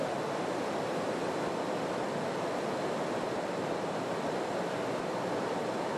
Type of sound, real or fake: real